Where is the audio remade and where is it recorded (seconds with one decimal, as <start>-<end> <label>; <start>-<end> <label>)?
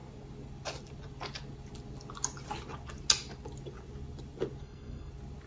0.0-4.6 recorded; 4.6-5.1 remade; 5.1-5.5 recorded